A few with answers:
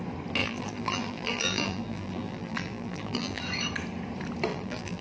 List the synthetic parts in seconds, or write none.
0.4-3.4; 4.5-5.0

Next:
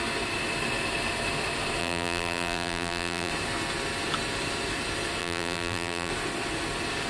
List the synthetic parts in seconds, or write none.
1.8-3.3; 5.2-6.1

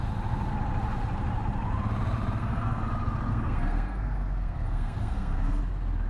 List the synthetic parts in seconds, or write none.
2.4-2.9; 3.3-5.6